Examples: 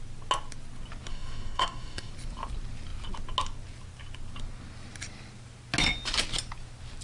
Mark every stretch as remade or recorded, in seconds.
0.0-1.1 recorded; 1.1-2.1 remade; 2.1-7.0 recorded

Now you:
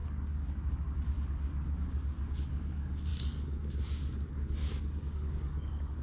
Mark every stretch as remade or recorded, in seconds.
0.0-6.0 remade

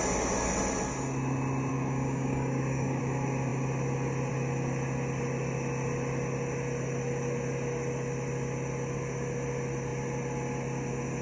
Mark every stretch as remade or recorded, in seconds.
0.0-1.7 recorded; 1.7-3.0 remade; 3.0-11.2 recorded

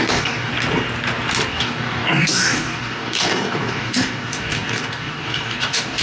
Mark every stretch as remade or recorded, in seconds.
0.0-0.5 remade; 0.5-1.5 recorded; 1.5-6.0 remade